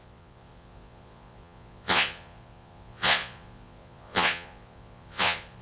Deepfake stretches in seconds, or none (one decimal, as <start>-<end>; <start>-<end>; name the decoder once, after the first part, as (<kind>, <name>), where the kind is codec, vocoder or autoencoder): 0.0-5.6 (vocoder, Vocos)